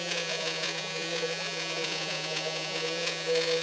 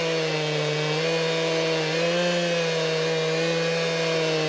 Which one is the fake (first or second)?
first